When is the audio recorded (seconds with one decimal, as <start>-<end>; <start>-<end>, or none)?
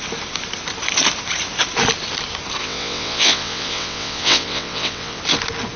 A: 0.0-2.6; 5.2-5.8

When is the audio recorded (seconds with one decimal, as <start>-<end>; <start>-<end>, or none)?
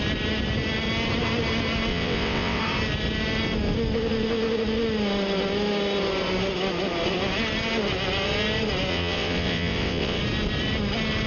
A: 0.0-1.9; 2.6-8.9; 10.2-11.3